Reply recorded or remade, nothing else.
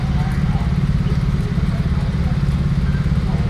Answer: recorded